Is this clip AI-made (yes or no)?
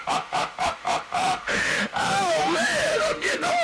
yes